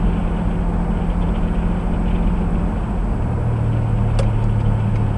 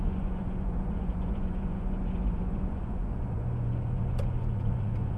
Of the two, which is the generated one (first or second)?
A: second